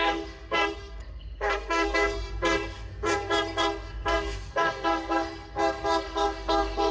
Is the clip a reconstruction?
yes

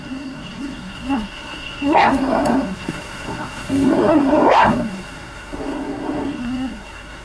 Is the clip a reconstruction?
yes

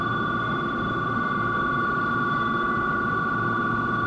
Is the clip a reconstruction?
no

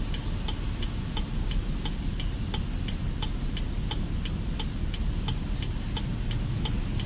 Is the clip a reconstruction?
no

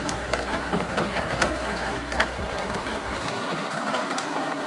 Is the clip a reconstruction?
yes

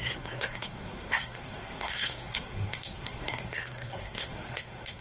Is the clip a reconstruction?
yes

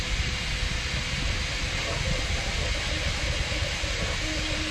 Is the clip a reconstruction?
no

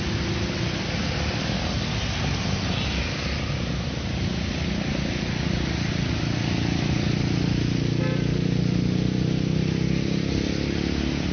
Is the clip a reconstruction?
no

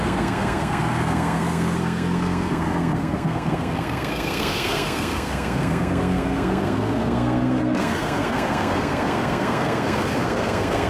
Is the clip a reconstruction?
yes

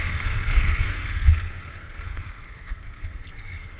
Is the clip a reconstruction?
yes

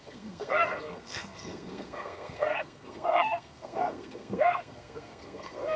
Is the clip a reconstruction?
yes